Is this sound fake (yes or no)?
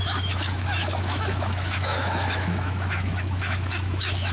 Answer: yes